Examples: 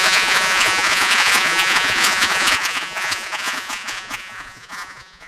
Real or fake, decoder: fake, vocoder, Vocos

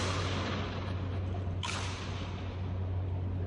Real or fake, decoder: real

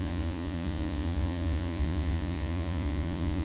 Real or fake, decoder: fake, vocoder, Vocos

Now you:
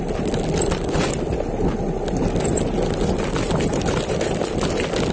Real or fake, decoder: real